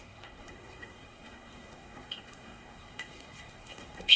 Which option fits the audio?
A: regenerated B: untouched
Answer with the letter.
A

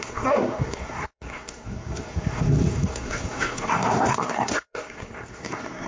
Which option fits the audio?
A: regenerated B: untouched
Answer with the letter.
A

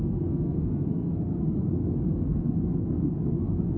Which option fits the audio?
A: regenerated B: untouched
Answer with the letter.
A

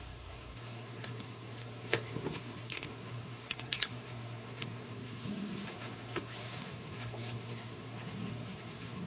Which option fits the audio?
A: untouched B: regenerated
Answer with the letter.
B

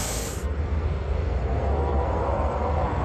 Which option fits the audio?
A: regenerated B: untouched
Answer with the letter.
A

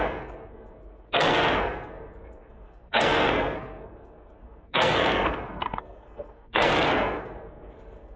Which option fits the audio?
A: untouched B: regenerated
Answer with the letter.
B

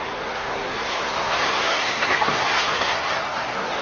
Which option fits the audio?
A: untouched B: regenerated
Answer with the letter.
B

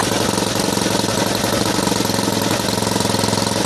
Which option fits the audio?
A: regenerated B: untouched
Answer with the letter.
B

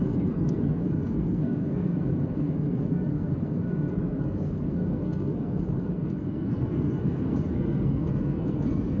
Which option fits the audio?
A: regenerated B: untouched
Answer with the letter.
A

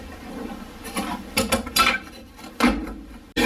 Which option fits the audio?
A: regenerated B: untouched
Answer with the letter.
B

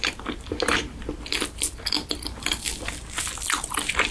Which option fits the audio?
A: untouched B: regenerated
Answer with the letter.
A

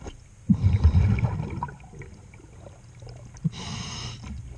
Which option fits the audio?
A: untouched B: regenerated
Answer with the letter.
A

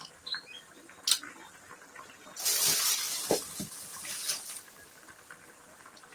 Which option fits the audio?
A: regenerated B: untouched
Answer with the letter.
B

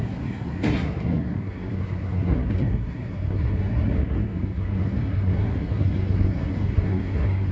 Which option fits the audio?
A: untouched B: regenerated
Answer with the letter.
B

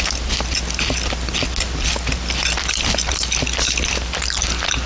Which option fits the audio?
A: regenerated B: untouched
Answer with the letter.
B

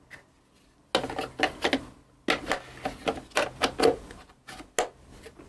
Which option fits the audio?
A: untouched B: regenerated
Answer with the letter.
A